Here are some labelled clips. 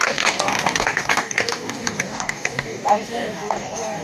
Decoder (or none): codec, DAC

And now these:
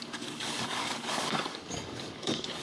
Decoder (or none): codec, DAC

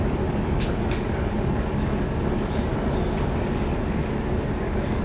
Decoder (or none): codec, DAC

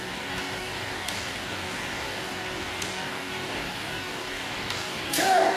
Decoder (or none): codec, DAC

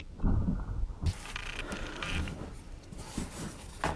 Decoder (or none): none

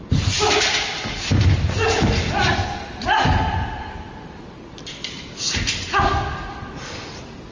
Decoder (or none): none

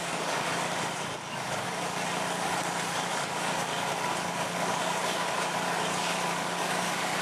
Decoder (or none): codec, DAC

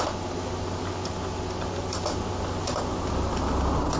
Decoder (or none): none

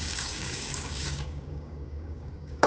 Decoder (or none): codec, DAC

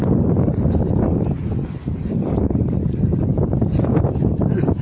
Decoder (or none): none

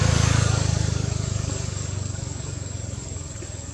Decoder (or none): codec, DAC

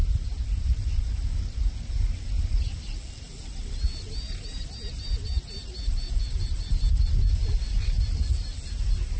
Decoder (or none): none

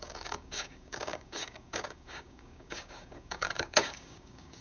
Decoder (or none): codec, DAC